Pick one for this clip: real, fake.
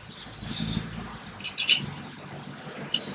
real